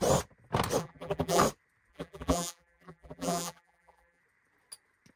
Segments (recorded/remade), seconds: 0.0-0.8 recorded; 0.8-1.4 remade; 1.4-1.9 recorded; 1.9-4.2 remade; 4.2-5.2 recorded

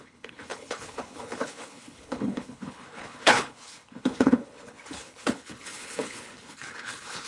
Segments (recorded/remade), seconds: 0.0-7.3 remade

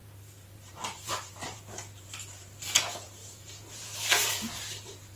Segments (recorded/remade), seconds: 0.0-5.2 remade

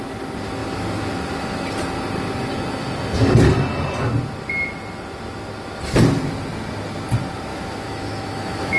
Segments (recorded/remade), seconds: 0.0-7.5 recorded; 7.5-8.8 remade